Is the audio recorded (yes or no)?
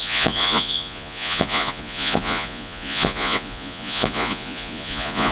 no